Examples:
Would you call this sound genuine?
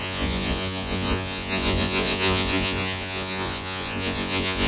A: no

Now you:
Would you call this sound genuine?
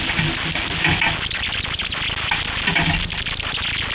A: yes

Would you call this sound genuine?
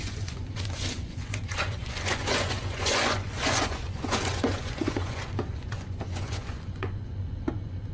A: no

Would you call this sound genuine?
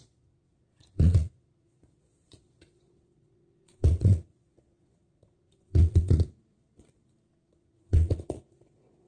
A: no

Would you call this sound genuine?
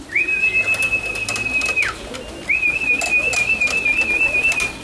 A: yes